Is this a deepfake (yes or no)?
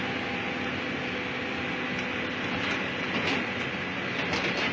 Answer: no